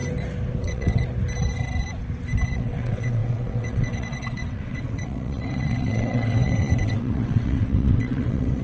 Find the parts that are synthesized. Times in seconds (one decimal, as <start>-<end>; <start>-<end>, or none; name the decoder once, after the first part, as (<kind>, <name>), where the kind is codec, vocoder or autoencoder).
0.6-1.0 (vocoder, WaveNeXt); 2.5-8.6